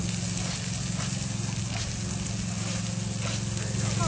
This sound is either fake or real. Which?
real